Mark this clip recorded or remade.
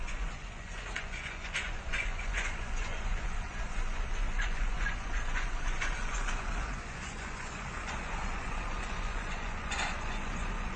remade